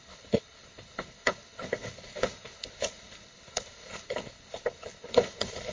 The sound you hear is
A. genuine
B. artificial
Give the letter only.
B